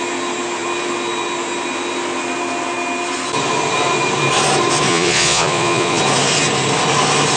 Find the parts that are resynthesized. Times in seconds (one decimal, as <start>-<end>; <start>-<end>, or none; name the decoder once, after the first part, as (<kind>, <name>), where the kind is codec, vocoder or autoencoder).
4.9-6.0 (vocoder, Vocos)